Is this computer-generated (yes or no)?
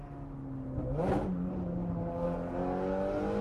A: no